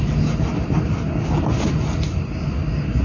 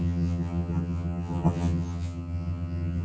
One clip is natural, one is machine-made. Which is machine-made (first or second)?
second